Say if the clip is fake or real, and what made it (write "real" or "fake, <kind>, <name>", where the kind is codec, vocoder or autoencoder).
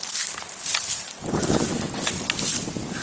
real